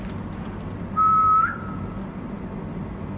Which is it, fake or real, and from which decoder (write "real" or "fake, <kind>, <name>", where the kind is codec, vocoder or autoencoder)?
real